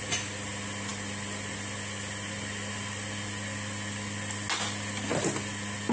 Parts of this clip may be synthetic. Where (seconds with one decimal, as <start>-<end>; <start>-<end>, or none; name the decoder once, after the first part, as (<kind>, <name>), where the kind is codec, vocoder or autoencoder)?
none